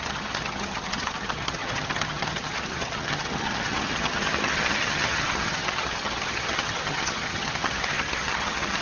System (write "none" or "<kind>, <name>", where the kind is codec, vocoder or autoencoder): vocoder, HiFi-GAN